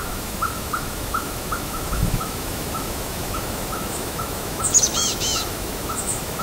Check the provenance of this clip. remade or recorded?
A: remade